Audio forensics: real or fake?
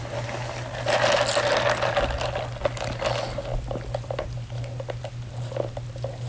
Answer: real